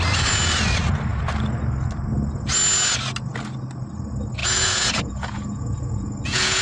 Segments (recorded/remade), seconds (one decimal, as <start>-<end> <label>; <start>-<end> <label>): 0.0-4.4 recorded; 4.4-6.6 remade